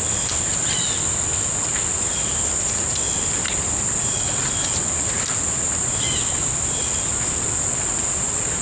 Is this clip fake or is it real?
real